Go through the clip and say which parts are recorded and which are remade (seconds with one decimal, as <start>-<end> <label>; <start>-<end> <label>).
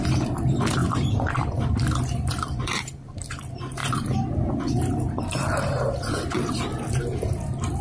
0.0-7.8 remade